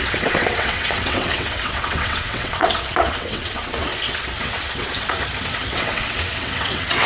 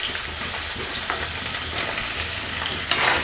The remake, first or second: first